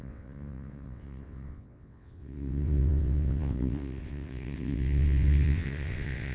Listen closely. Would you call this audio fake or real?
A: fake